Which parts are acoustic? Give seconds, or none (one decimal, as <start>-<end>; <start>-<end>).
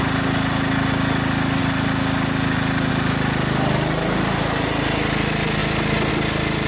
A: 0.0-6.7